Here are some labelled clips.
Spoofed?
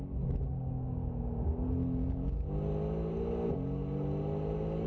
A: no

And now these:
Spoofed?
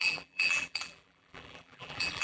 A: yes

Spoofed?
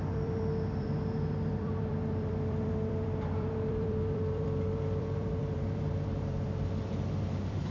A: yes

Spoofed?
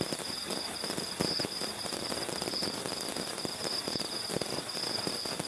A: no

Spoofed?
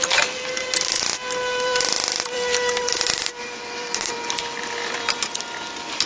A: yes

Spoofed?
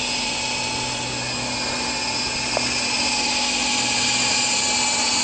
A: no